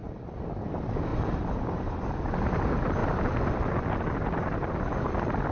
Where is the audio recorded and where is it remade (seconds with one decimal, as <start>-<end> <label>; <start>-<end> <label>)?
0.0-5.5 recorded